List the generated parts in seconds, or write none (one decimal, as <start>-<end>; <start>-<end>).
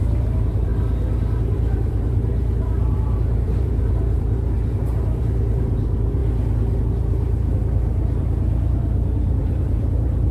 0.0-0.7; 1.4-6.2; 6.8-10.3